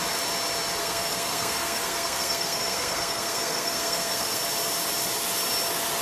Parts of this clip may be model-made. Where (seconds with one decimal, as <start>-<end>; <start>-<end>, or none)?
0.8-4.4